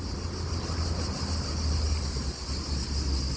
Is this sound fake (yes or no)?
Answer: no